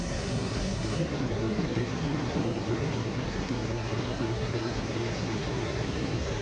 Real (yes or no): no